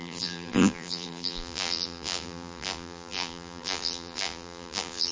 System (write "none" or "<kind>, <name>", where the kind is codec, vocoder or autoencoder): vocoder, BigVGAN v2